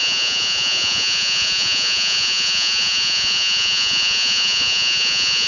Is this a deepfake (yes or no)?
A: yes